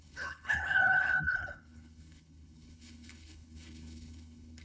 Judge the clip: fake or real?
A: fake